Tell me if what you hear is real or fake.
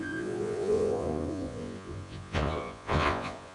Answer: fake